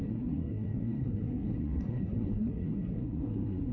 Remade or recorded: remade